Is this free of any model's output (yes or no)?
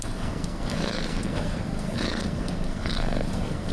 no